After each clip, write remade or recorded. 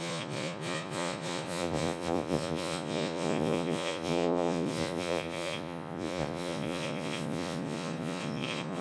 remade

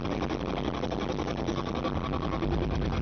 recorded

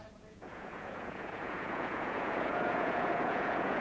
remade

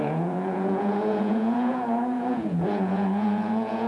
remade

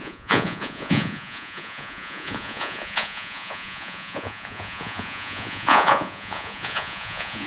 remade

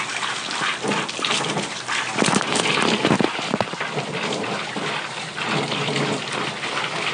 recorded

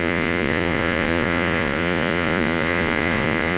remade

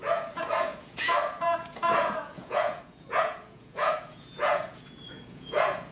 remade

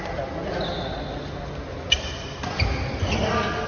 recorded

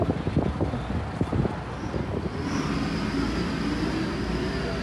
recorded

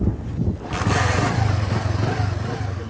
recorded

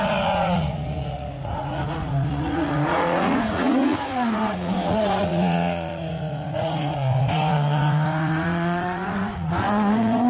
remade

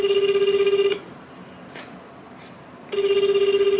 recorded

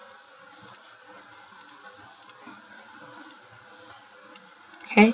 recorded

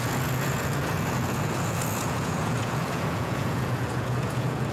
remade